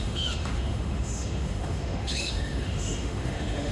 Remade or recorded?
remade